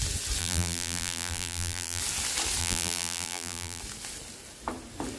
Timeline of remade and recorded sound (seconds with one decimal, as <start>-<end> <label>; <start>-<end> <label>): 0.0-0.4 recorded; 0.4-2.0 remade; 2.0-2.6 recorded; 2.6-3.8 remade; 3.8-5.2 recorded